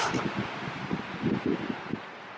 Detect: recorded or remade recorded